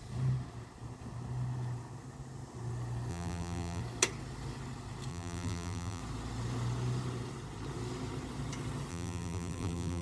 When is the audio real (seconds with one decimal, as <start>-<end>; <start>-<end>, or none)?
0.0-3.1; 3.8-5.1; 6.0-8.9